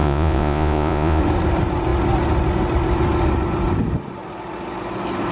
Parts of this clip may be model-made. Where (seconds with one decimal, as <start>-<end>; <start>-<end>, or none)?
0.0-1.2